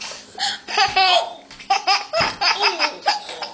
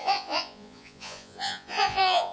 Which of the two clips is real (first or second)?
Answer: first